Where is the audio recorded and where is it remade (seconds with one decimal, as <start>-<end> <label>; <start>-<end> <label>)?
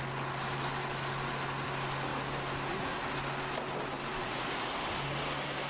0.0-4.2 recorded; 4.2-4.7 remade; 4.7-5.7 recorded